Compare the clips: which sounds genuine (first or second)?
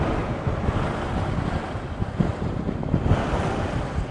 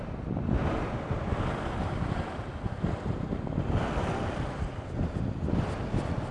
second